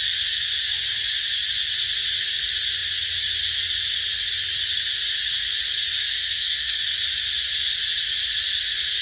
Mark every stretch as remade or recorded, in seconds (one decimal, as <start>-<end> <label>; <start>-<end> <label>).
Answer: 0.0-6.0 recorded; 6.0-6.8 remade; 6.8-9.0 recorded